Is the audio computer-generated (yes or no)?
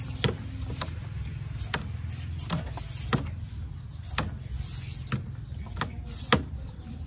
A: no